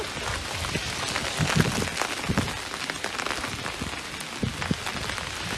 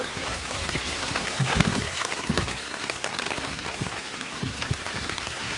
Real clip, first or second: first